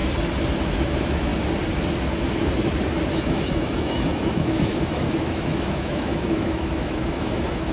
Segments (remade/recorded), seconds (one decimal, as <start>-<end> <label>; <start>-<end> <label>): 0.0-0.6 recorded; 0.6-1.3 remade; 1.3-3.1 recorded; 3.1-7.7 remade